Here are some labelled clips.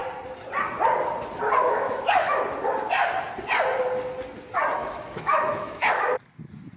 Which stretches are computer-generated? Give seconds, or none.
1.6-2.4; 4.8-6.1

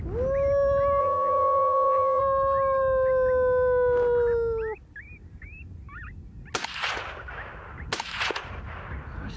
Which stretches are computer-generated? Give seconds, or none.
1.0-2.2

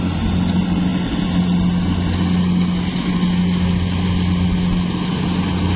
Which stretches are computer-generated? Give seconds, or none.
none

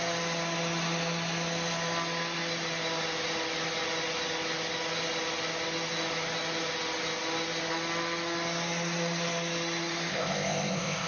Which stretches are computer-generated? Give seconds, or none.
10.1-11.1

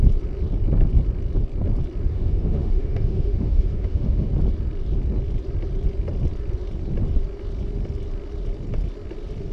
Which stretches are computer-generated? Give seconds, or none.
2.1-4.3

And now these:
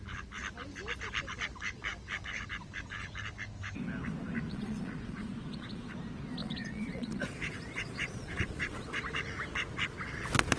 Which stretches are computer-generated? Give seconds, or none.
4.5-5.9; 6.4-9.0

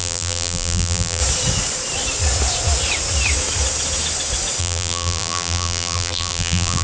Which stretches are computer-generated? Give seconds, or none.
0.0-1.2; 4.6-6.8